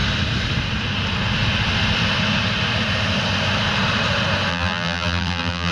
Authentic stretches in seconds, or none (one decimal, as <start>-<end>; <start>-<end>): 0.0-4.5